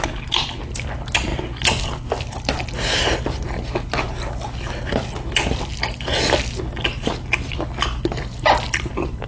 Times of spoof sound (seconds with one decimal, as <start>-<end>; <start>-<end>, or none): 8.3-9.3